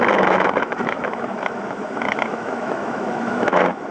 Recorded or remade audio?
remade